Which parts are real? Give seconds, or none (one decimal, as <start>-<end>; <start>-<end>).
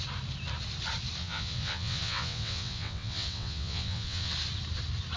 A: 0.0-1.2; 4.3-5.2